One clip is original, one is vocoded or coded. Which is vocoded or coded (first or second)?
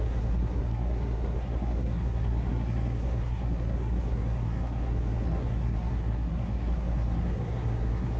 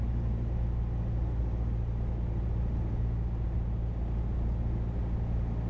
first